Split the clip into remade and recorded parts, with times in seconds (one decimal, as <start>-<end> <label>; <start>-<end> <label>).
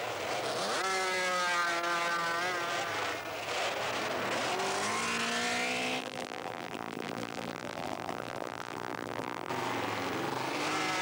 0.0-6.0 recorded; 6.0-9.5 remade; 9.5-11.0 recorded